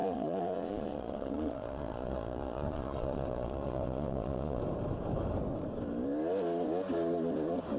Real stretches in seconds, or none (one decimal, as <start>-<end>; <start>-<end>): 4.6-7.8